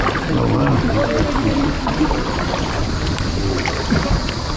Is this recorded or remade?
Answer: recorded